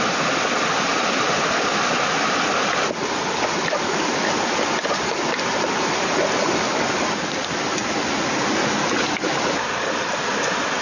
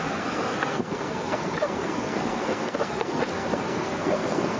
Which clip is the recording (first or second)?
first